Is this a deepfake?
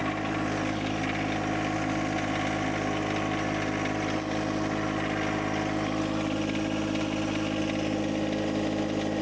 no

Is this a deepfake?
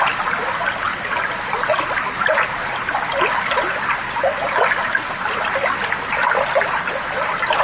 no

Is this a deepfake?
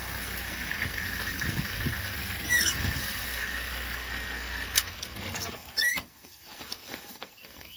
yes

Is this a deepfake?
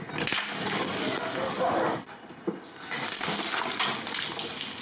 no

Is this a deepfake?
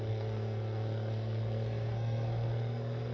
yes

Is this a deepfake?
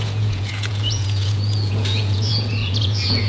yes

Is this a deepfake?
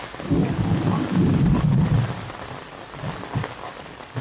no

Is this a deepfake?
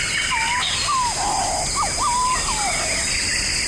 no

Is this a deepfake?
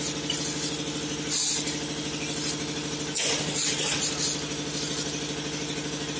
no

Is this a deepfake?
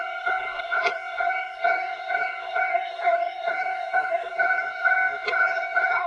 yes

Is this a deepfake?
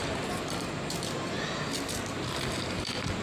no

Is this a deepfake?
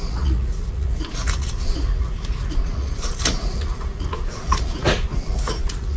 yes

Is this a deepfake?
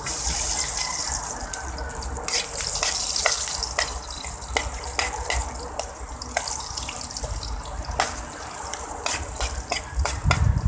no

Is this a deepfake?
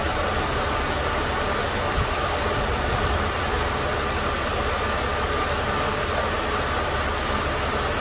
no